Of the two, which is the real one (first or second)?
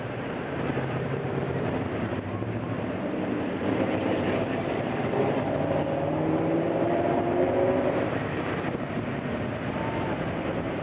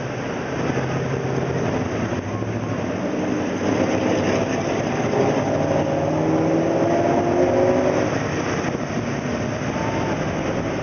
second